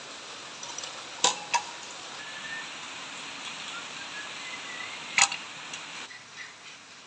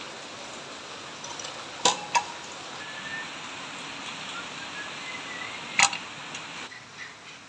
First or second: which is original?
second